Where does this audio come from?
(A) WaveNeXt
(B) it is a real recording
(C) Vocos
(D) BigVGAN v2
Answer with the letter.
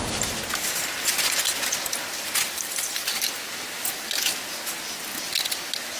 B